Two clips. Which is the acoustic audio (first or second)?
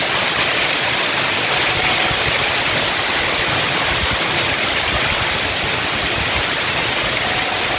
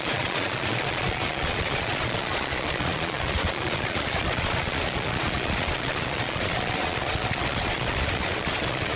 first